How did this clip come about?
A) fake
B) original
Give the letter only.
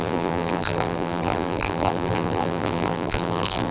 A